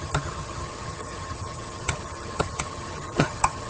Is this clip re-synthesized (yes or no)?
yes